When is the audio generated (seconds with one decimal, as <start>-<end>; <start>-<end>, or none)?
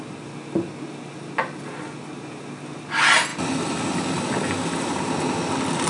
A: none